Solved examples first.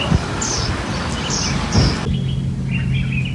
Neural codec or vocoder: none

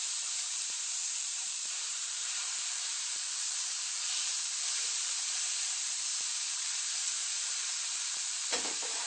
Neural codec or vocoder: vocoder, BigVGAN v2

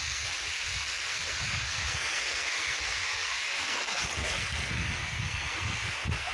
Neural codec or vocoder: codec, SNAC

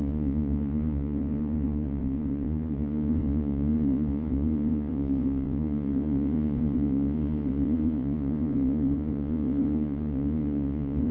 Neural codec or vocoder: vocoder, Vocos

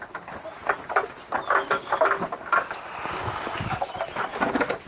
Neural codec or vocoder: none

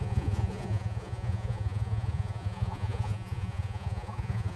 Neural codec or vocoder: vocoder, Vocos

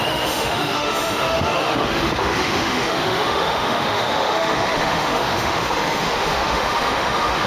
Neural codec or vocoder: autoencoder, DAC-VAE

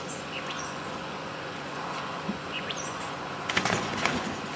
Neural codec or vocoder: vocoder, Vocos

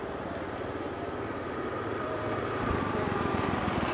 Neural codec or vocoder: none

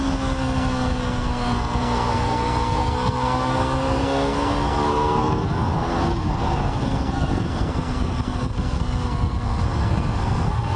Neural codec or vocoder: codec, SNAC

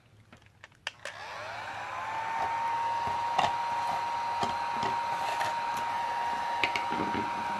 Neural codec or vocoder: none